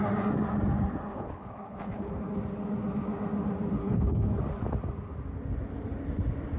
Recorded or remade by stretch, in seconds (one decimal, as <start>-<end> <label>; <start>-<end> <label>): 0.0-1.1 recorded; 1.1-2.1 remade; 2.1-3.8 recorded; 3.8-4.4 remade; 4.4-6.6 recorded